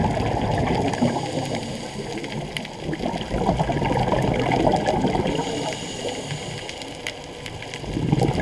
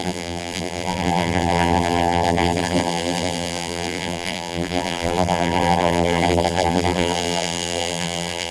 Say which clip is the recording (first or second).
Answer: first